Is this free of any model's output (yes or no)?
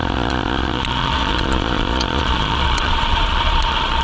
no